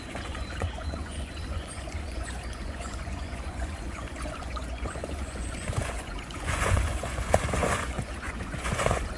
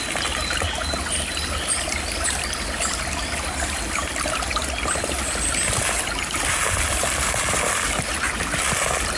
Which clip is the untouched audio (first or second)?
second